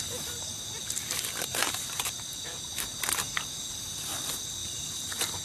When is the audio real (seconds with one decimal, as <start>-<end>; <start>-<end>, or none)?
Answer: 0.0-0.5; 1.1-1.5; 2.6-4.6